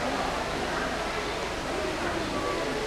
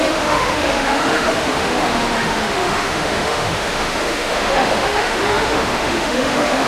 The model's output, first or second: second